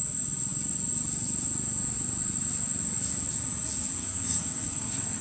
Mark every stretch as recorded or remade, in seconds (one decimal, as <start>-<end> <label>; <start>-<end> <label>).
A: 0.0-4.0 recorded; 4.0-5.2 remade